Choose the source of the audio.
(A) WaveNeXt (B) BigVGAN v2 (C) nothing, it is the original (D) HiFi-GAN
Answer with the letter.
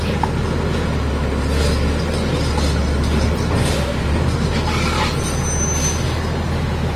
C